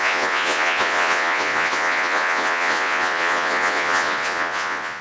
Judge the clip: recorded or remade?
remade